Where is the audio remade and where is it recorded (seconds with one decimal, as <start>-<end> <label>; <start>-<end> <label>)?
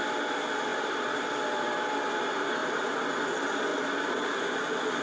0.0-0.7 recorded; 0.7-1.8 remade; 1.8-2.6 recorded; 2.6-3.2 remade; 3.2-3.7 recorded; 3.7-4.4 remade; 4.4-5.0 recorded